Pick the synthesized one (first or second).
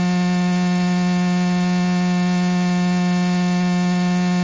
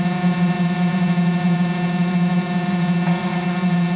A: second